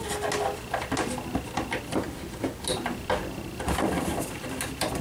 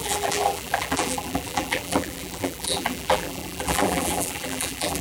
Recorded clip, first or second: first